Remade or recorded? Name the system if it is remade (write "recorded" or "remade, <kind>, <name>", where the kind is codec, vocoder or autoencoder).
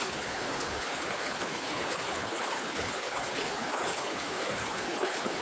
remade, codec, HILCodec